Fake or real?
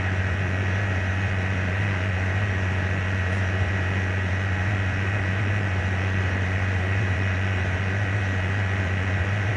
fake